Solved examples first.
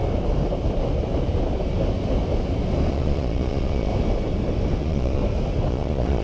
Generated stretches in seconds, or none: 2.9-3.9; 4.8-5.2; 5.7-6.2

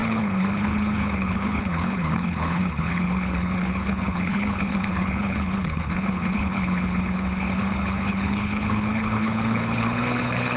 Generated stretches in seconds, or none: 0.0-10.6

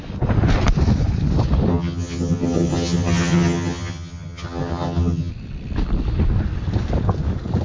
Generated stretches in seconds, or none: 1.7-5.3

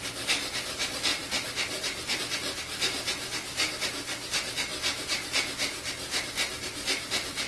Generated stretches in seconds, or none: none

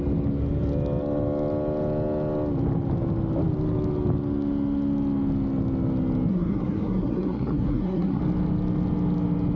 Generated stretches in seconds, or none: 6.3-8.2

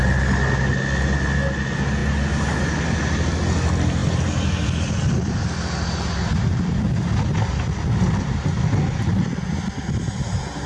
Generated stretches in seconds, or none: none